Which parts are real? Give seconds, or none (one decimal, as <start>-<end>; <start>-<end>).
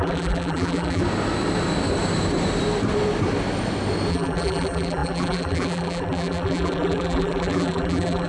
1.0-4.1